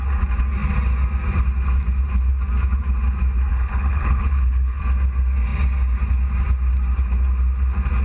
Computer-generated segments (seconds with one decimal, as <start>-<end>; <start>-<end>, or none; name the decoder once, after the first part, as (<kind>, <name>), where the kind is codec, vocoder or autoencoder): 3.5-4.8 (codec, HILCodec)